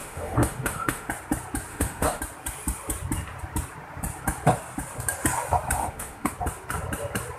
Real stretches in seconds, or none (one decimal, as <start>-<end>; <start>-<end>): 1.1-1.7; 2.2-5.8; 6.3-7.4

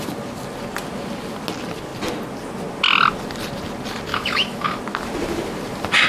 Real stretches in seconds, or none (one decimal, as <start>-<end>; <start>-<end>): 0.0-4.1; 4.8-6.1

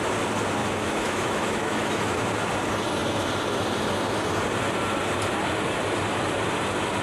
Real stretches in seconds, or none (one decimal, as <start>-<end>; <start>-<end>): 0.0-0.6; 2.2-7.0

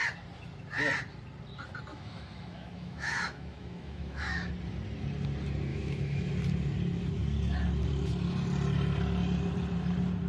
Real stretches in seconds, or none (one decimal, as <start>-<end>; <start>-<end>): 0.0-1.9; 4.5-5.7; 6.3-10.3

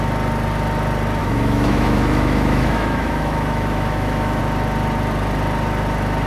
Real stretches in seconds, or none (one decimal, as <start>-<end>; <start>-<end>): 0.0-1.2; 4.4-6.3

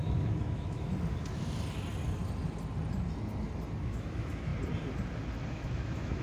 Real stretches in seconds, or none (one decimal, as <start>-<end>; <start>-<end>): 0.9-3.8; 4.5-5.5

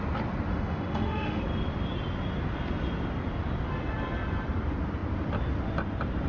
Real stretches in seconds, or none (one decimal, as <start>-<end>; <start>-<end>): 0.0-0.5; 1.4-6.3

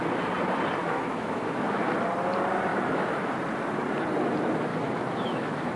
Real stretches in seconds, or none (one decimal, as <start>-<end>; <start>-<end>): 0.0-0.8; 1.9-2.7; 3.3-4.7